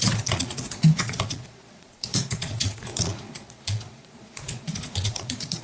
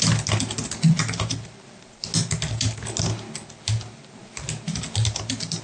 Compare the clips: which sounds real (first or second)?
second